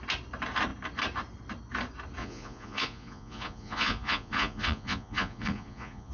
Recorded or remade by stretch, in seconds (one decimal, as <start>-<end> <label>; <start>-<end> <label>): 0.0-2.2 recorded; 2.2-6.1 remade